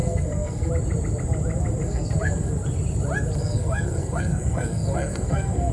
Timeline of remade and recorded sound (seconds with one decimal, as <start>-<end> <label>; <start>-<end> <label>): 0.0-0.7 remade; 0.7-1.8 recorded; 1.8-2.5 remade; 2.5-3.4 recorded; 3.4-5.7 remade